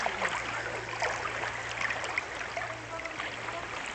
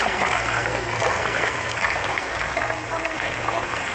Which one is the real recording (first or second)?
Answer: first